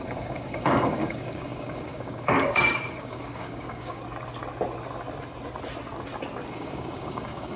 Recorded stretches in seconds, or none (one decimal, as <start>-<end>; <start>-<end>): 4.0-6.5